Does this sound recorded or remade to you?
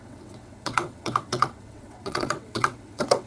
remade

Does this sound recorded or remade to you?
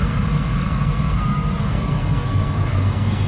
remade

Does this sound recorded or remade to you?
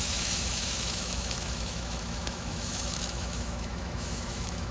remade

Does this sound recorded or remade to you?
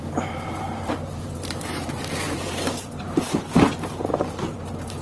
remade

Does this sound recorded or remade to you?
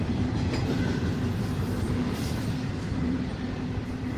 remade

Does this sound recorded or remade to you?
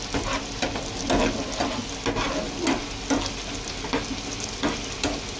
recorded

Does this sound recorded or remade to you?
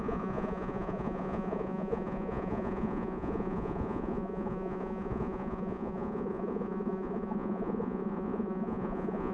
remade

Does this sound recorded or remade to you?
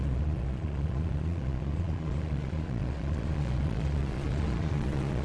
remade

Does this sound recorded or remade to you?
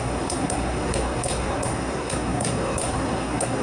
remade